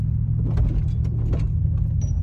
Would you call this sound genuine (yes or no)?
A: yes